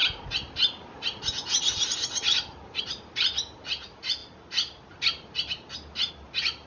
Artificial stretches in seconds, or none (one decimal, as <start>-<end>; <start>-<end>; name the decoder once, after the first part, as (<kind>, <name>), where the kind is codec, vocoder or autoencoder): none